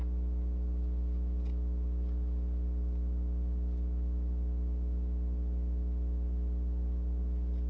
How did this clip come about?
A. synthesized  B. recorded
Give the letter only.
B